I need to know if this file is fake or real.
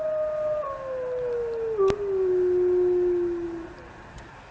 real